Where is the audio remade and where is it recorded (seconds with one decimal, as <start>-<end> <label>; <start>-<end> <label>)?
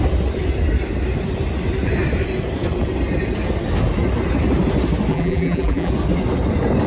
0.0-5.1 recorded; 5.1-5.9 remade; 5.9-6.9 recorded